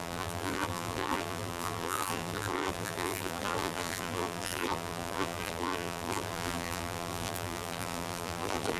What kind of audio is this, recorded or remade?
remade